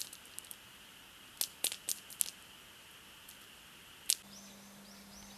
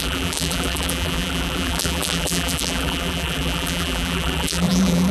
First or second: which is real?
first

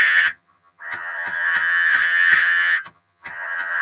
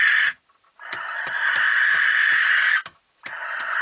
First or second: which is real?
second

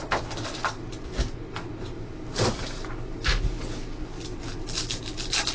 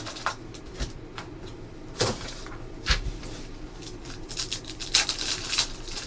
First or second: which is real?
first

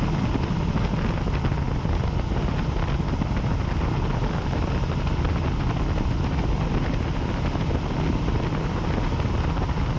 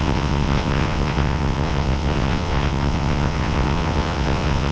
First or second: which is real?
first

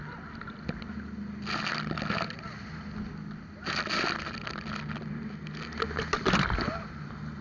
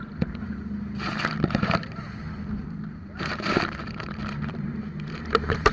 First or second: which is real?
first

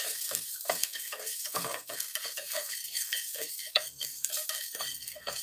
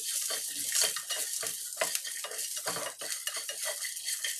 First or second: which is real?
second